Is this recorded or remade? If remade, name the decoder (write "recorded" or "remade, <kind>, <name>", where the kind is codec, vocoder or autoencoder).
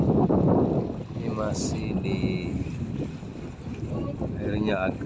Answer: recorded